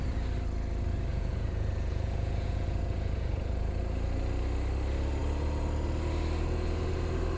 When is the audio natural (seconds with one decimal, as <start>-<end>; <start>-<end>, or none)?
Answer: 0.0-1.1; 3.8-7.4